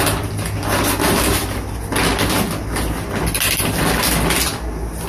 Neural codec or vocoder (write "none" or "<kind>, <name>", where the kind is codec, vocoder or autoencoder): none